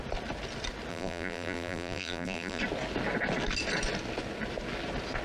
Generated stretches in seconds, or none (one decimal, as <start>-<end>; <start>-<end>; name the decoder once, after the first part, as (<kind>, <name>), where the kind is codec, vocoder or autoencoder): 0.9-2.6 (vocoder, BigVGAN v2)